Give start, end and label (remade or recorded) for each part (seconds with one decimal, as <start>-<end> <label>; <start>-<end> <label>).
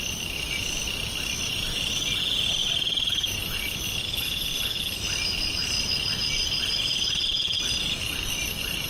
0.0-2.6 recorded; 2.6-3.4 remade; 3.4-8.9 recorded